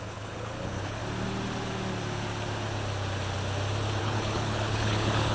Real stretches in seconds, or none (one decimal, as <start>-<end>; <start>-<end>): 1.0-4.0